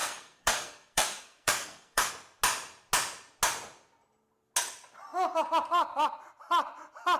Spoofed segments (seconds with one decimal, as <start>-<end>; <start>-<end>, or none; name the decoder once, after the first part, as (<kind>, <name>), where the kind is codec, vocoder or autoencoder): 0.0-2.1 (codec, SNAC)